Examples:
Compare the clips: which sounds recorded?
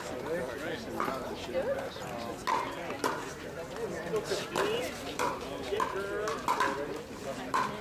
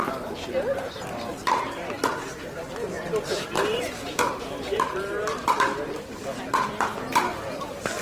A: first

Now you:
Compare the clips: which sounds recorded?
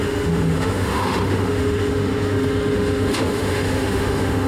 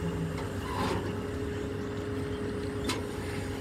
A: second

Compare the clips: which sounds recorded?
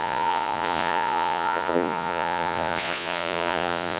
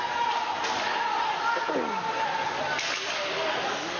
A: second